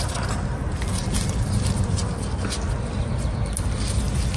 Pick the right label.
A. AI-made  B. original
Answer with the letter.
B